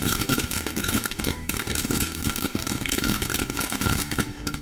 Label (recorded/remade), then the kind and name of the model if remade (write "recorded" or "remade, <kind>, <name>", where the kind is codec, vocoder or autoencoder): remade, codec, DAC